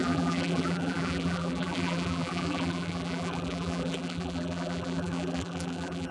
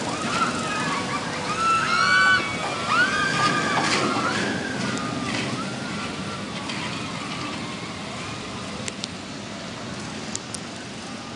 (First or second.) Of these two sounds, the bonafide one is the second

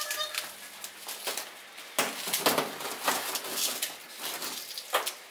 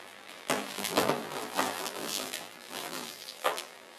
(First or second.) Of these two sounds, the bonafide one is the first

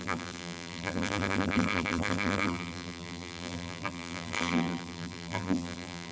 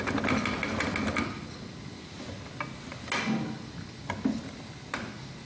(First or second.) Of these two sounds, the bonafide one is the second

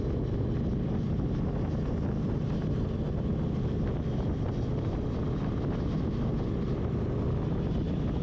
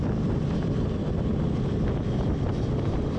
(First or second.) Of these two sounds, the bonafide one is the first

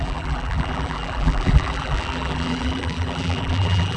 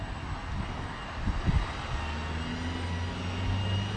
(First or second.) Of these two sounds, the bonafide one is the second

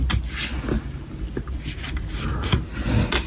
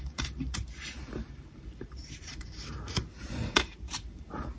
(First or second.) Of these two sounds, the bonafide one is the first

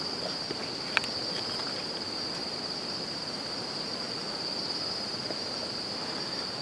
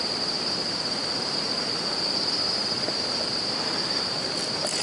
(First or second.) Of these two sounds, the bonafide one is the first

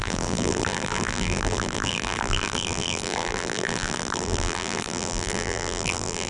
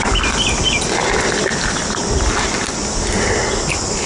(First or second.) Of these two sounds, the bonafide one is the second